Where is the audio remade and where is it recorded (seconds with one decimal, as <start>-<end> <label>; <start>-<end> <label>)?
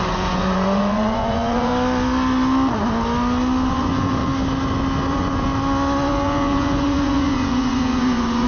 0.0-1.7 remade; 1.7-3.7 recorded; 3.7-4.3 remade; 4.3-5.1 recorded; 5.1-5.5 remade; 5.5-6.1 recorded; 6.1-8.5 remade